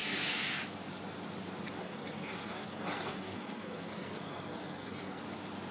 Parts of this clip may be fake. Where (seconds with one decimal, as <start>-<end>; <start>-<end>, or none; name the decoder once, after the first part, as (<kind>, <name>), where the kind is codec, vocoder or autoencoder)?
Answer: 0.0-0.5 (codec, SNAC); 1.8-5.2